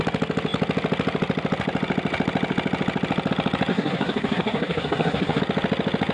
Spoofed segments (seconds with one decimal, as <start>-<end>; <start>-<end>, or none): 3.7-5.4